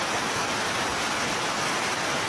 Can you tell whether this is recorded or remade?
recorded